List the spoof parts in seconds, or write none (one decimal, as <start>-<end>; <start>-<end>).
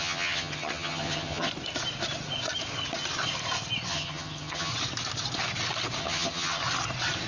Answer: 0.0-1.5; 3.9-4.7; 6.0-6.6